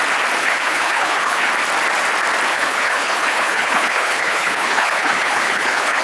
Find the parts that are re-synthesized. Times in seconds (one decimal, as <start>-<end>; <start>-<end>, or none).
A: 0.4-1.5; 2.5-6.0

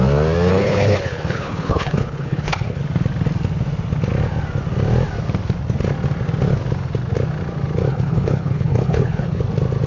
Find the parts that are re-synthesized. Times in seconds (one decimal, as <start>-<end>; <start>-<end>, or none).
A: 0.5-2.8; 7.9-9.4

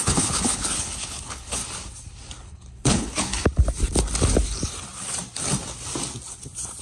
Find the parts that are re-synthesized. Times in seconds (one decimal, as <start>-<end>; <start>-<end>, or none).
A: 0.0-1.6; 2.4-3.3

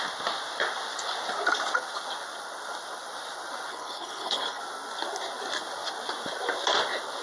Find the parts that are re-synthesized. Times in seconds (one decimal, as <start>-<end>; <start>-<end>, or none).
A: 3.7-4.6

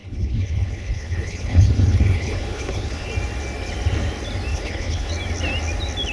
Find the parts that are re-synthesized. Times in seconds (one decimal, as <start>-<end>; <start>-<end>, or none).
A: 0.0-3.1; 4.5-5.1

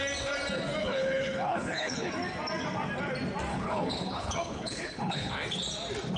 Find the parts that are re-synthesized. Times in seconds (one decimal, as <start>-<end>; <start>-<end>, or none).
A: 0.8-2.1; 3.5-5.3